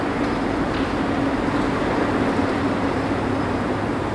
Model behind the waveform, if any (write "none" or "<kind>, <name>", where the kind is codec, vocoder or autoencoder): none